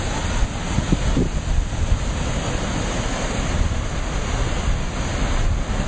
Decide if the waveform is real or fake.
real